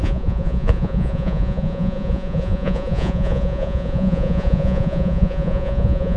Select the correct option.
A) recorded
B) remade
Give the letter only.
B